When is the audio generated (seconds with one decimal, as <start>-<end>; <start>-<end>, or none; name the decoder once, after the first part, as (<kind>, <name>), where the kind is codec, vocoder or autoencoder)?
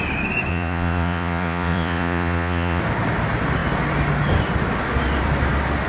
0.5-2.8 (vocoder, Vocos)